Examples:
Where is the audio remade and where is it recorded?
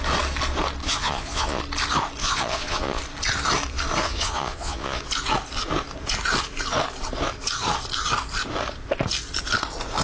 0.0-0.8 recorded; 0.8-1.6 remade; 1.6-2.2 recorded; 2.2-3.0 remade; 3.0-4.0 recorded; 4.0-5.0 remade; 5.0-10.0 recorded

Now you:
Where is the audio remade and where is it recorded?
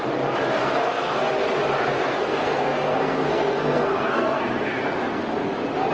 0.0-0.6 recorded; 0.6-1.2 remade; 1.2-2.0 recorded; 2.0-5.2 remade; 5.2-5.9 recorded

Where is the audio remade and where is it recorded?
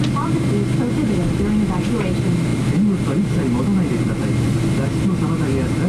0.0-5.9 recorded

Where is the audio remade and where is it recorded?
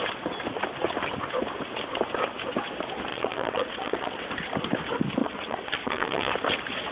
0.0-3.1 recorded; 3.1-4.2 remade; 4.2-5.2 recorded; 5.2-6.3 remade; 6.3-6.9 recorded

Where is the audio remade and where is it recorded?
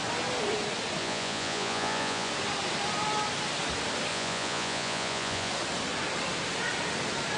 0.0-1.0 recorded; 1.0-2.3 remade; 2.3-4.1 recorded; 4.1-5.5 remade; 5.5-7.4 recorded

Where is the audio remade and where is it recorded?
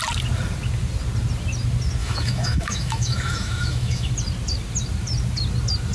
0.0-2.0 recorded; 2.0-4.1 remade; 4.1-5.9 recorded